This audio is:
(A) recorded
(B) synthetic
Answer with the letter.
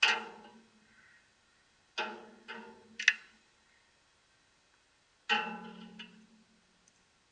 A